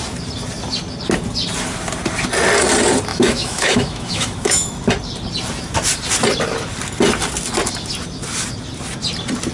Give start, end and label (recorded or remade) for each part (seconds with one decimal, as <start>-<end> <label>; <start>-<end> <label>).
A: 0.0-3.1 recorded; 3.1-4.8 remade; 4.8-9.5 recorded